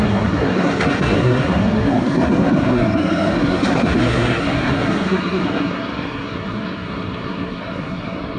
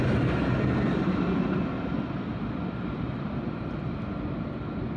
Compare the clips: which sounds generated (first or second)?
first